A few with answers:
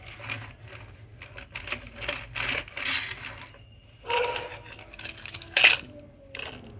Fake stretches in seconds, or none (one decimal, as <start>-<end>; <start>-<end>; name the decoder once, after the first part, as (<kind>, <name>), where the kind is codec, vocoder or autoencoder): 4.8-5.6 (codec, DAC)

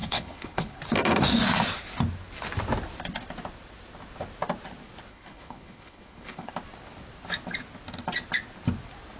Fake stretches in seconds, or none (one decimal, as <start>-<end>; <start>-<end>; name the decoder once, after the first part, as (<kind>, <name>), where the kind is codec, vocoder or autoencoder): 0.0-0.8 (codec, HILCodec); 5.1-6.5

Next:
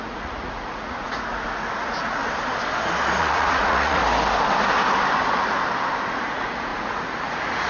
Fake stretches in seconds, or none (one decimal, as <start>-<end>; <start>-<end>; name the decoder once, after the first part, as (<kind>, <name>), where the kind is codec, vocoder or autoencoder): 0.0-2.2 (vocoder, Vocos); 3.2-4.0; 6.1-7.7